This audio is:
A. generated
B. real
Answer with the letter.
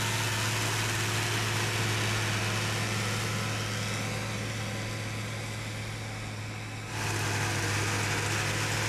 B